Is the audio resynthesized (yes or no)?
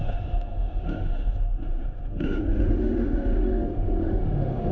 yes